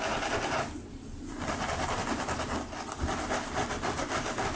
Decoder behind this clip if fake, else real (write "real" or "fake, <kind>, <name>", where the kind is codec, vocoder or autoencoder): real